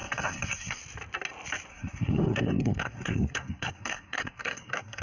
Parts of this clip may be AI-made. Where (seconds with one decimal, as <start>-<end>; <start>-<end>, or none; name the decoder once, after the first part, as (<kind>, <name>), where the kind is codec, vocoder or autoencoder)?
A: 0.0-0.8 (codec, SNAC); 1.7-5.0